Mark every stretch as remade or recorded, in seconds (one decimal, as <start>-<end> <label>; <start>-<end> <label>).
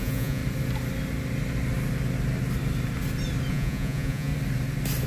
0.0-0.4 remade; 0.4-3.5 recorded; 3.5-4.3 remade; 4.3-5.1 recorded